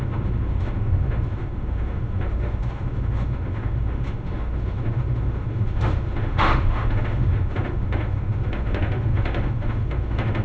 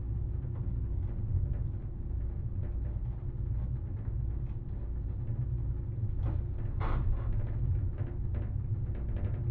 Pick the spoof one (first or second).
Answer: first